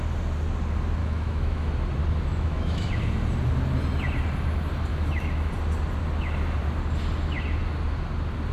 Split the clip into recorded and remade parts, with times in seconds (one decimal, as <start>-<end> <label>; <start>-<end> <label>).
0.0-1.0 recorded; 1.0-1.7 remade; 1.7-2.3 recorded; 2.3-2.9 remade; 2.9-4.9 recorded; 4.9-5.5 remade; 5.5-8.5 recorded